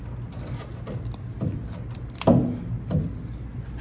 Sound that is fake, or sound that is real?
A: real